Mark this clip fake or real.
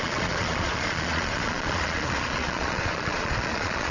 fake